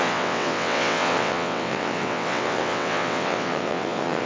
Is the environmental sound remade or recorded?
remade